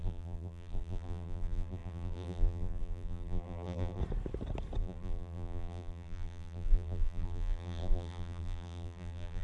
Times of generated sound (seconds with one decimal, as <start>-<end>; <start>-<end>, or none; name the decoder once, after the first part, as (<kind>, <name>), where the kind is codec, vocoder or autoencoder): 0.0-4.0 (vocoder, BigVGAN v2); 4.8-9.4